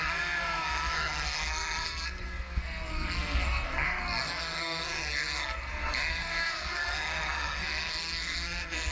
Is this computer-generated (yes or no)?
yes